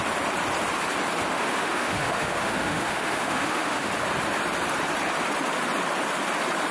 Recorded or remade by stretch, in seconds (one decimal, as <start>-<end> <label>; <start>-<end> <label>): 0.0-1.3 recorded; 1.3-3.9 remade; 3.9-6.7 recorded